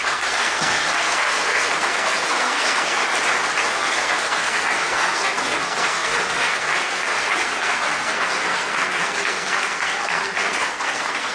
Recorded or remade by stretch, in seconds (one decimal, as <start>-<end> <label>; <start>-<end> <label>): 0.0-3.0 remade; 3.0-3.6 recorded; 3.6-11.3 remade